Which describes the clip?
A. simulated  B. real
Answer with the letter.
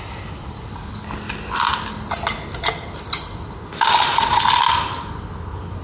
B